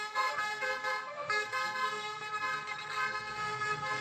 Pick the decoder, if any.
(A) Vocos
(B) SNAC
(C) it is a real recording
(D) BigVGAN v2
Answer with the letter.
B